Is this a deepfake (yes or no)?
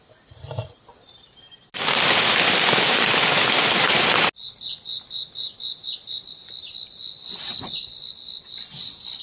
no